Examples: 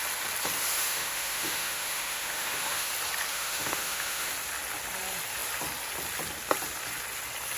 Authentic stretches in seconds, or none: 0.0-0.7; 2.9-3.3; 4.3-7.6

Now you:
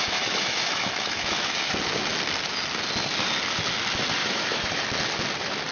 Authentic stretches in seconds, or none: 1.7-4.2; 4.8-5.7